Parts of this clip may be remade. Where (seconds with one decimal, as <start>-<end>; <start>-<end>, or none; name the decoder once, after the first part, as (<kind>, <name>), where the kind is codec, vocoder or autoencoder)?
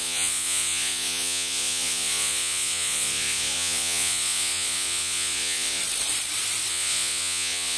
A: 0.0-5.8 (vocoder, Vocos); 6.7-7.8